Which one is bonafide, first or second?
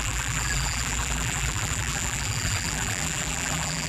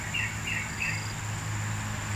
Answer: second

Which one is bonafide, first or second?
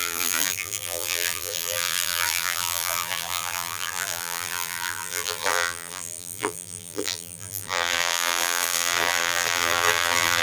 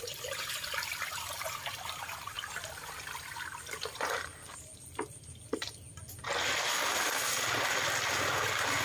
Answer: second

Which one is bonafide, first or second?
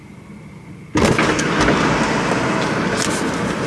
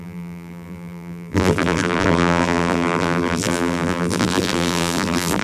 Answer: first